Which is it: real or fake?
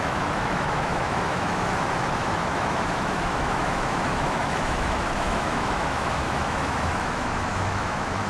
fake